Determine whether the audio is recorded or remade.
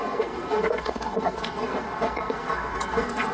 remade